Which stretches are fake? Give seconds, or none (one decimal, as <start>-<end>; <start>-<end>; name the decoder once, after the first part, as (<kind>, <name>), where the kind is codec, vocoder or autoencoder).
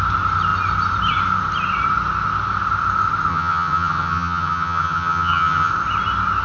3.3-5.7 (vocoder, HiFi-GAN)